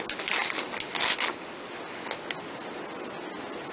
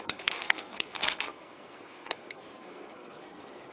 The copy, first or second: second